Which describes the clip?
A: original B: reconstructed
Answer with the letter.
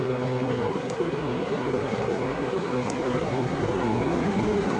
B